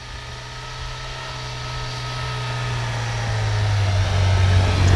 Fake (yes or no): no